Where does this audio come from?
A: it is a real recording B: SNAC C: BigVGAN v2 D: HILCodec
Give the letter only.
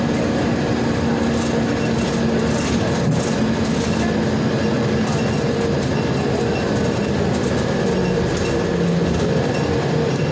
A